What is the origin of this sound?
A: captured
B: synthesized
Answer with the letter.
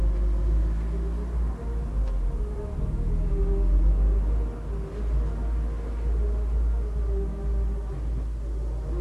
A